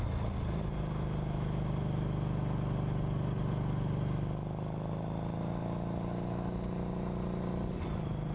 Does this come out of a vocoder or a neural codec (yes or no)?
no